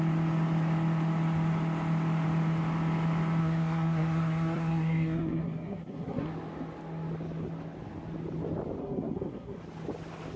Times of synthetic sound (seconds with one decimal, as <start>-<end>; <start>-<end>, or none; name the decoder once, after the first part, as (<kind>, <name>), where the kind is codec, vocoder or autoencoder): 3.4-6.3 (codec, SNAC); 8.8-9.6